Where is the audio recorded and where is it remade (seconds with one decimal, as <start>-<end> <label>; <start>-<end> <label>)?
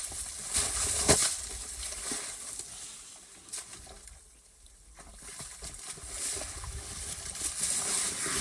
0.0-8.4 recorded